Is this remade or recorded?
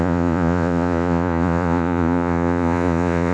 remade